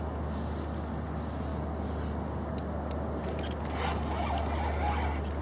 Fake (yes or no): no